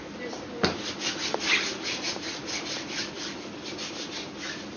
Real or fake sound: real